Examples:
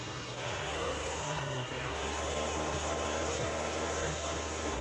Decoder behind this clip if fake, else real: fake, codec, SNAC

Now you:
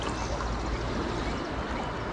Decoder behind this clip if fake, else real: real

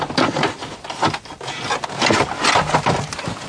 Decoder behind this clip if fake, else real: real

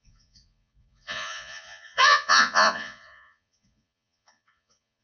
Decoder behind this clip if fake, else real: fake, vocoder, Vocos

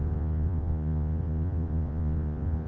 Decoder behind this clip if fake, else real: fake, vocoder, Vocos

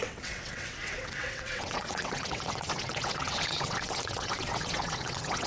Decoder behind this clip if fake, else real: fake, vocoder, WaveNeXt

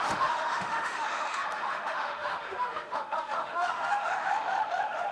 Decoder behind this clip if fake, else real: fake, autoencoder, DAC-VAE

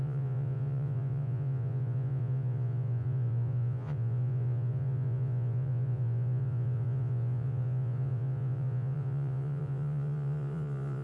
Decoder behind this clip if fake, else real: fake, vocoder, Vocos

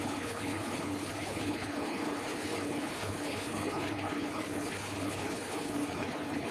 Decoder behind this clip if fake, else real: fake, codec, HILCodec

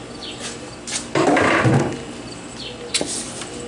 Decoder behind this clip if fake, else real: real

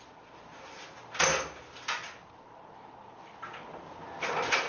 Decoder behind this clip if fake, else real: real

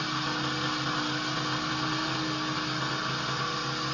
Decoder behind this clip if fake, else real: real